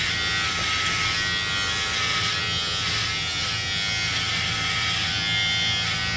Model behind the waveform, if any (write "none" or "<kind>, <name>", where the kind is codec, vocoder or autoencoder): none